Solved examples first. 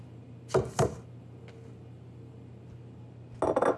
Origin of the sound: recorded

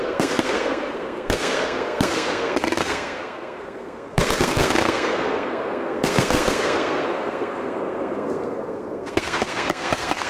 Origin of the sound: remade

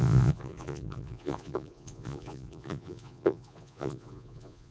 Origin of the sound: remade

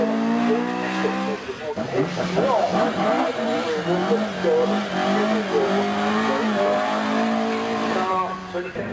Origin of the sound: recorded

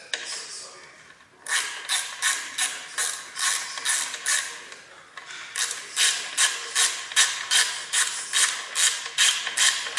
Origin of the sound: recorded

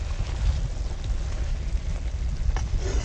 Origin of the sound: recorded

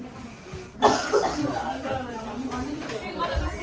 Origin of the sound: recorded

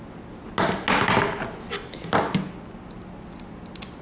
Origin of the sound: recorded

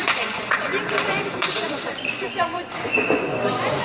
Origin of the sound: remade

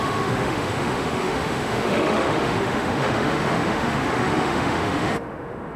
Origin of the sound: remade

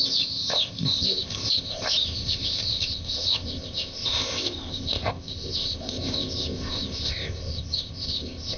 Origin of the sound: remade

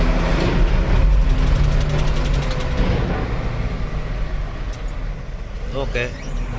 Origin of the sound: recorded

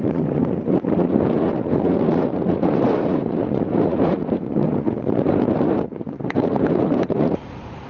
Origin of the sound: remade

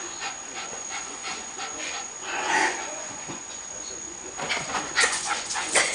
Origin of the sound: remade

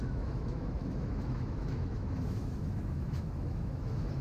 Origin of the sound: remade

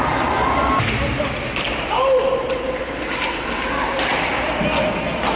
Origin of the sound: recorded